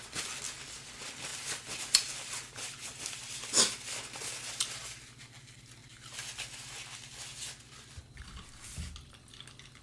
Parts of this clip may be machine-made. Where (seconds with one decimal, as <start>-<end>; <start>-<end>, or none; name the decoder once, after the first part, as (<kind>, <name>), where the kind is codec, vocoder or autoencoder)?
none